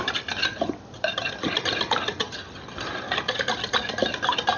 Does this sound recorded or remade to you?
remade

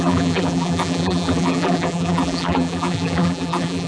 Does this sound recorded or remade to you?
remade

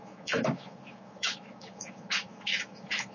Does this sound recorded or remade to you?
remade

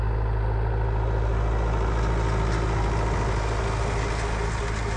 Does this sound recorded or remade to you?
recorded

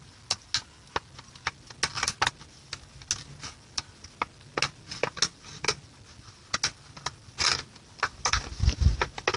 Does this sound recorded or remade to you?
recorded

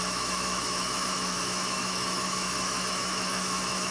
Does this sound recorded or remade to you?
remade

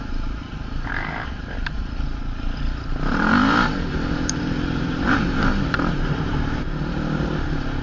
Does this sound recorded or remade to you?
remade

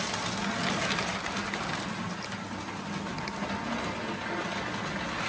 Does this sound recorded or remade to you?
recorded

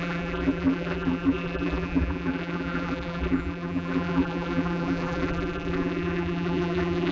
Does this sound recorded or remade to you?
remade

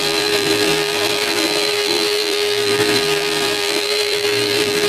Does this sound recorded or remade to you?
remade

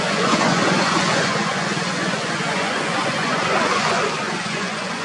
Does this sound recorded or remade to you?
remade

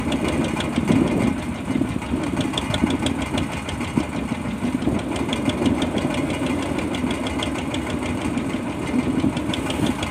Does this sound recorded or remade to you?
recorded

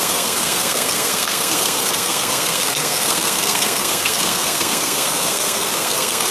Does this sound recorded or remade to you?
remade